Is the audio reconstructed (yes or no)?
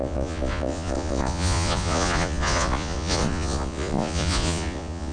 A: yes